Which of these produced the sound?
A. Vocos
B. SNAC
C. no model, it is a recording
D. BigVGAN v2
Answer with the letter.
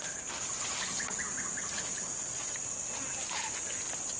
C